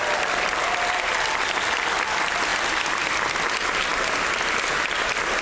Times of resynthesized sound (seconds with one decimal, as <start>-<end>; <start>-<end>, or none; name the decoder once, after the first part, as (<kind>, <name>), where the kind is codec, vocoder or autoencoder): none